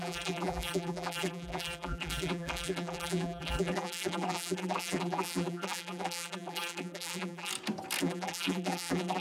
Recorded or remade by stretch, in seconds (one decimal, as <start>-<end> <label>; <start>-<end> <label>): 0.0-7.5 remade; 7.5-8.0 recorded; 8.0-9.2 remade